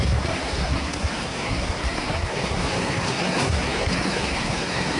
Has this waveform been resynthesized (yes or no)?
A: yes